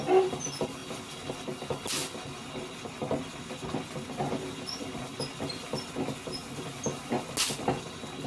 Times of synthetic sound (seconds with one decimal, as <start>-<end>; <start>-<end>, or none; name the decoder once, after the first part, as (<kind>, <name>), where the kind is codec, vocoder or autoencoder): none